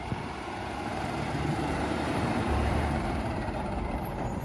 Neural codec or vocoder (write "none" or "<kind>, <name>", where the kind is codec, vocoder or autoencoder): vocoder, BigVGAN v2